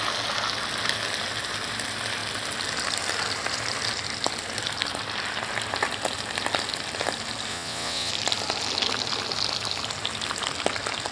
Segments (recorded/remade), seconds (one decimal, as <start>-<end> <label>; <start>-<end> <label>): 0.0-7.5 recorded; 7.5-8.1 remade; 8.1-11.1 recorded